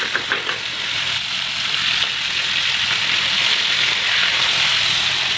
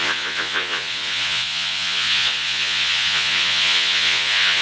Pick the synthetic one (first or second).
second